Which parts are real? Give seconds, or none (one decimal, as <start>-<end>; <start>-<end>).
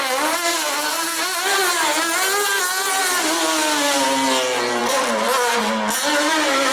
0.0-6.7